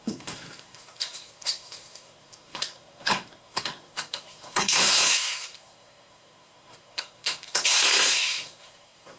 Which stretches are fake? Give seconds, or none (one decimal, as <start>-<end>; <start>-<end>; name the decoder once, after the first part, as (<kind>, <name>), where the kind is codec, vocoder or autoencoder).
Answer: 0.0-9.2 (codec, SNAC)